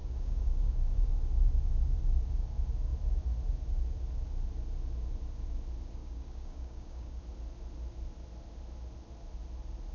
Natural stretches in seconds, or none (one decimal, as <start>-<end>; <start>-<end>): 1.1-6.0; 7.2-9.9